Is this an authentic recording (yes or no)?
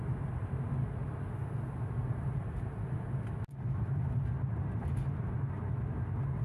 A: yes